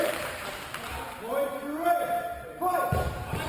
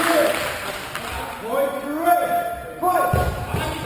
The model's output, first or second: first